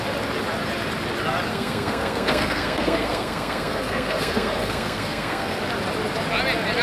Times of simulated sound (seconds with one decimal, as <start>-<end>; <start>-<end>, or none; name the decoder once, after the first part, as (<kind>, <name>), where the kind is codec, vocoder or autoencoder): 1.5-5.6 (codec, SNAC)